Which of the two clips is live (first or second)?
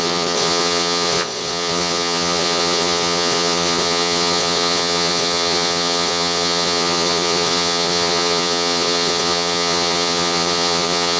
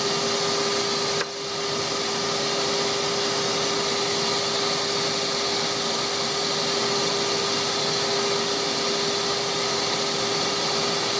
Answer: second